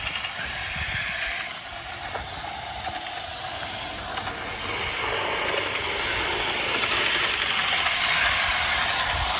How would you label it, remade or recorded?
recorded